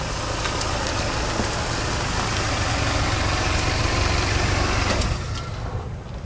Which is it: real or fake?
real